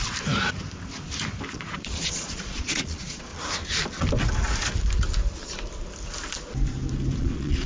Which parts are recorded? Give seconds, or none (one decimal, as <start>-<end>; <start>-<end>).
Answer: 0.0-1.5; 3.3-7.2